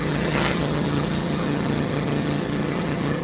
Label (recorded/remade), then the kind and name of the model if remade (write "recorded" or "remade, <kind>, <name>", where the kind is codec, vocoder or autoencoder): remade, vocoder, HiFi-GAN